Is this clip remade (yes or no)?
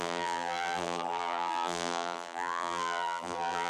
yes